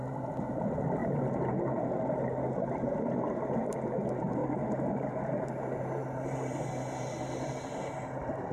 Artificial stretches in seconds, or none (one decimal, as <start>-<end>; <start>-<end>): none